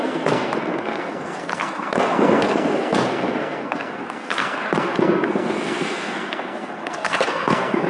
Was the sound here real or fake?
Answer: fake